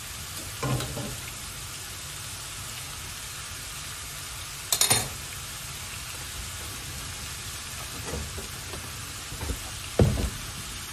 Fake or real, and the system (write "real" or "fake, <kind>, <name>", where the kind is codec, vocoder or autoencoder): real